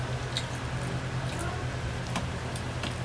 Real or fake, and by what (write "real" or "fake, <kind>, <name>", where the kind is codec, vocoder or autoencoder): real